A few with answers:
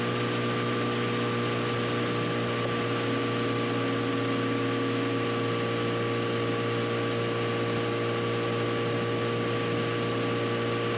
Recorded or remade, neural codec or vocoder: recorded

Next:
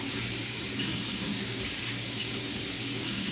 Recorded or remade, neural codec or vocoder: remade, codec, DAC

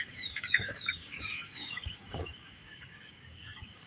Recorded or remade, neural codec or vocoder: remade, codec, DAC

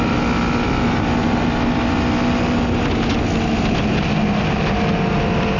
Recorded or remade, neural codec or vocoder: recorded